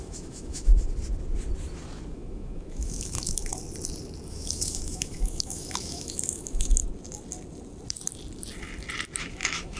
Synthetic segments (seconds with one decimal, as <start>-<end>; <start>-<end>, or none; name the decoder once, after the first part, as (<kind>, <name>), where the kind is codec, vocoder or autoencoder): 0.0-0.7 (autoencoder, DAC-VAE); 2.1-3.5; 4.3-6.8; 9.2-9.8